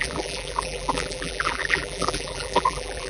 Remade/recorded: remade